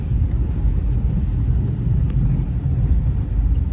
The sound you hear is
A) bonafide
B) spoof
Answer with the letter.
A